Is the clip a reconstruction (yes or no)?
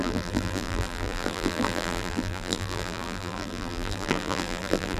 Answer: yes